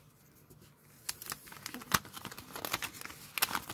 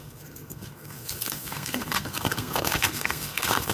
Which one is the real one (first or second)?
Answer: first